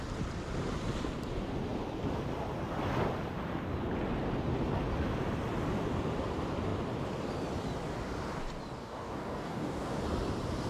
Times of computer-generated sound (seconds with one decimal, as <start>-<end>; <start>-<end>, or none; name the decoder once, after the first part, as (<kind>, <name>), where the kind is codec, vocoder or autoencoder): 8.8-10.0 (codec, DAC)